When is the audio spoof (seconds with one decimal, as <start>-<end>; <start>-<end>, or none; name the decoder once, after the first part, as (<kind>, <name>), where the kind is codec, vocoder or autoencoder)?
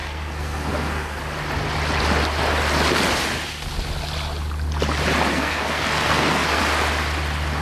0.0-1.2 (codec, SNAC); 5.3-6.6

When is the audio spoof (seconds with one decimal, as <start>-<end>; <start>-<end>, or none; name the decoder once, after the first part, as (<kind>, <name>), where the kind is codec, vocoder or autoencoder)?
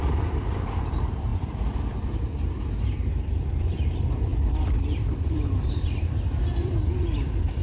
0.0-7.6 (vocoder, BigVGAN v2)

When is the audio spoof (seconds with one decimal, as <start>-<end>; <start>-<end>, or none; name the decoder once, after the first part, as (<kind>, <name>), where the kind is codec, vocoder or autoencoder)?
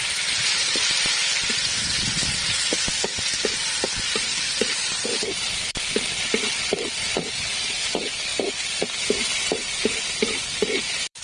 0.0-1.2 (vocoder, BigVGAN v2); 4.1-11.2